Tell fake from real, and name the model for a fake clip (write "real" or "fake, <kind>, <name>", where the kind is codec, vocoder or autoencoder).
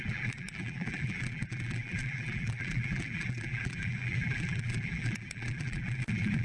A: fake, vocoder, BigVGAN v2